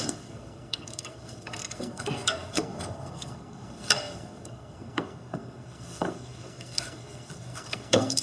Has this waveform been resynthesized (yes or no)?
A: yes